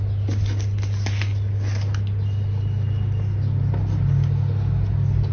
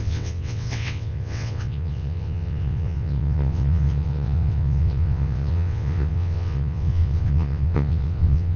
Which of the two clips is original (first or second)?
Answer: first